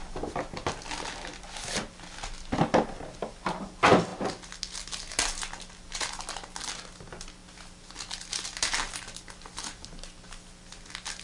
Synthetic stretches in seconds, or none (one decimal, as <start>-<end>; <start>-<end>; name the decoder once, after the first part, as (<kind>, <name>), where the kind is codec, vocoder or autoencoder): none

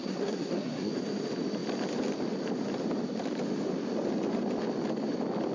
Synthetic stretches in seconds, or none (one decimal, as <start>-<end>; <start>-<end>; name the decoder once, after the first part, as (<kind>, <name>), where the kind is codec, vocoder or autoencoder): 0.0-0.9 (codec, SNAC)

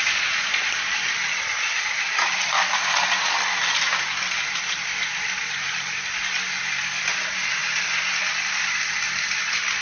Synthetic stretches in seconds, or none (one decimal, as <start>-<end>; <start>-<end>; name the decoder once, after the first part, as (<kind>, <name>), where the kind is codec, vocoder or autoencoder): none

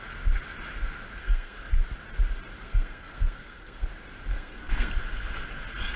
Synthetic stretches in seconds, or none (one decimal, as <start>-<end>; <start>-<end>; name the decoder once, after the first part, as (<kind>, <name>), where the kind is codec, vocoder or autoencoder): 1.2-1.7 (codec, SNAC); 2.6-3.9; 4.3-4.9

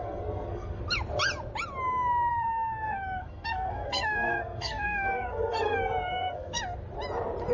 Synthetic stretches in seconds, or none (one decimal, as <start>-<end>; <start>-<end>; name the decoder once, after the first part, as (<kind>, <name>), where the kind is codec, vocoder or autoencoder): 0.0-0.8 (codec, SNAC); 2.3-6.6

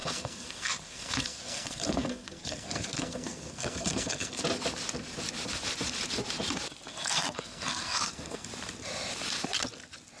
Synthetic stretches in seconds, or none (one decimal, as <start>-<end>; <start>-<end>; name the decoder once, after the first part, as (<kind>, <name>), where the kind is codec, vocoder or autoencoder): 0.0-4.4 (codec, SNAC); 6.9-8.5

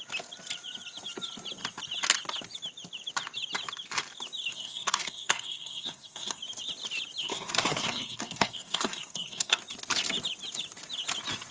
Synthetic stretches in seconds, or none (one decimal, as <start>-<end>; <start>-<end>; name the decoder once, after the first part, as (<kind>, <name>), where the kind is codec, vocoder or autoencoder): 4.5-6.4 (codec, SNAC); 7.2-9.6